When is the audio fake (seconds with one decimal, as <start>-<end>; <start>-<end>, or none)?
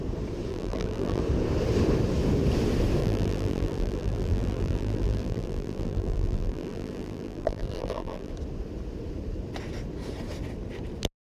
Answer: 0.5-1.2; 3.0-8.3